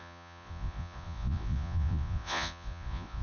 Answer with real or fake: fake